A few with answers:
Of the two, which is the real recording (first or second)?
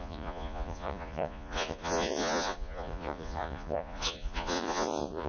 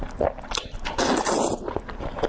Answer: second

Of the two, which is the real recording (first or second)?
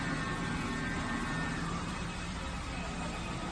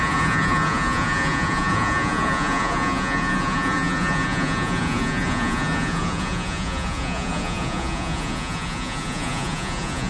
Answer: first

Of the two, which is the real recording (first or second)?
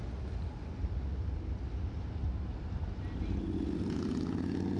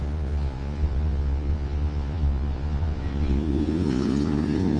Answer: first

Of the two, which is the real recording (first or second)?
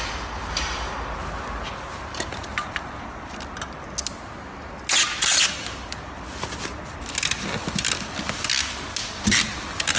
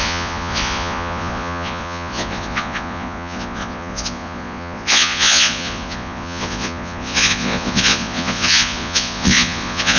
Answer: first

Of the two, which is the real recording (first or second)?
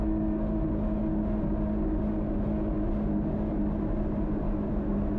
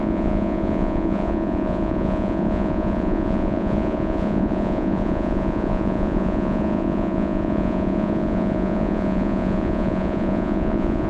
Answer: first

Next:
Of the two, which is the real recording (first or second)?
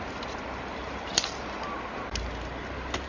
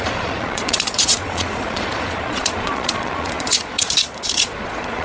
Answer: first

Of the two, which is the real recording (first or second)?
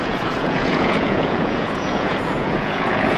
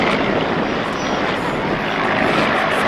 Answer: second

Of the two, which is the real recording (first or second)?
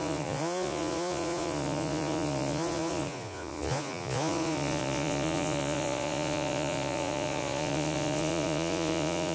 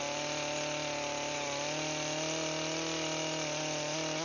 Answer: second